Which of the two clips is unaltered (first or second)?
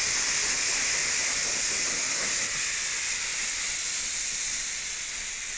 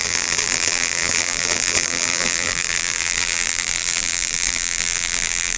first